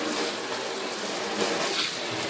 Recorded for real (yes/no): yes